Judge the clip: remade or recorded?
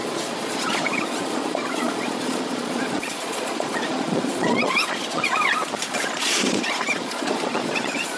remade